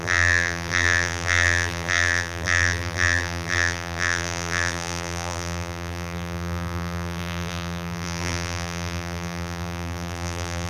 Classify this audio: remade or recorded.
remade